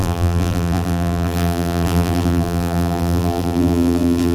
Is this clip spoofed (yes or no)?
yes